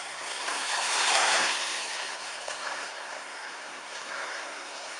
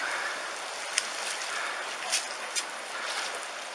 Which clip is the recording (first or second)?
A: second